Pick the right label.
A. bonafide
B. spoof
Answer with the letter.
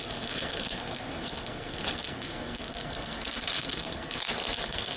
B